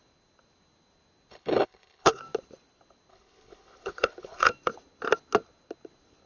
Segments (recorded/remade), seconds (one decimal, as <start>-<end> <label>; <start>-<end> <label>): 0.0-1.3 recorded; 1.3-2.2 remade; 2.2-3.1 recorded; 3.1-4.5 remade; 4.5-6.3 recorded